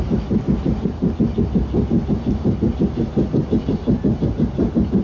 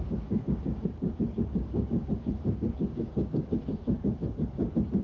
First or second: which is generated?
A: second